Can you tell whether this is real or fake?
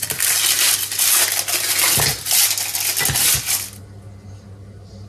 real